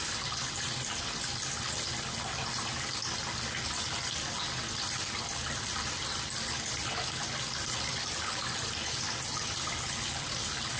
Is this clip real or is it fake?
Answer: real